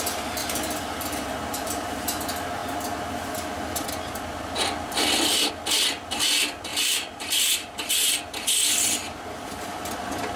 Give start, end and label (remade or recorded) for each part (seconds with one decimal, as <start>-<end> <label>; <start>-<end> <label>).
0.0-0.4 recorded; 0.4-2.2 remade; 2.2-6.7 recorded; 6.7-8.2 remade; 8.2-10.4 recorded